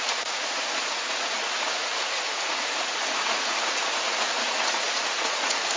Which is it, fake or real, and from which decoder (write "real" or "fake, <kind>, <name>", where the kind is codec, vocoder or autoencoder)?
fake, vocoder, Vocos